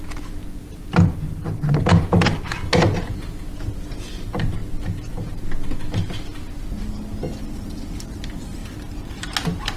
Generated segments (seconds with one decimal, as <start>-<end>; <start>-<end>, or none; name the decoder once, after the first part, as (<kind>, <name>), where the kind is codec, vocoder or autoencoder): none